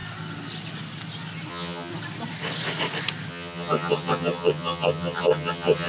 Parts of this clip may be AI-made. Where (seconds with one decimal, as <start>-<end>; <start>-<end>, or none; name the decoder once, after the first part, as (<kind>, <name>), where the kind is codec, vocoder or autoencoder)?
1.5-1.9 (vocoder, HiFi-GAN); 3.3-5.9